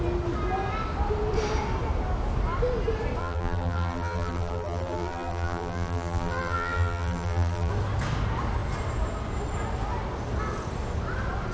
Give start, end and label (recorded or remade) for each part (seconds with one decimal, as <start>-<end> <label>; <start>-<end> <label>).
0.0-3.2 recorded; 3.2-7.7 remade; 7.7-11.5 recorded